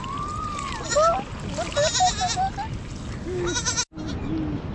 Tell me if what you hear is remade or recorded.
recorded